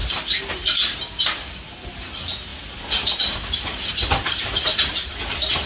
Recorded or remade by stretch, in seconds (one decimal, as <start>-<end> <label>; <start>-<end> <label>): 0.0-0.5 remade; 0.5-5.7 recorded